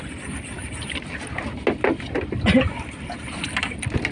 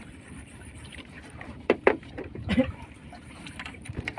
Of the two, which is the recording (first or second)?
first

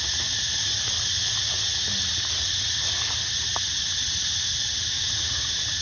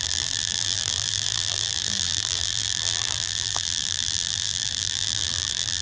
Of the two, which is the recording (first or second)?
first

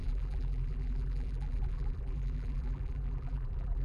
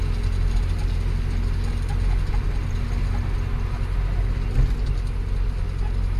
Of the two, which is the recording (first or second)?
second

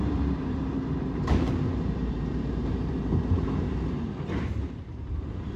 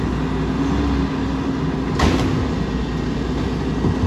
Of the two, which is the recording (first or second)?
second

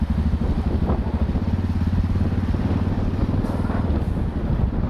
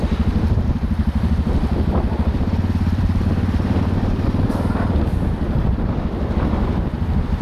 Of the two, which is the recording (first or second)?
first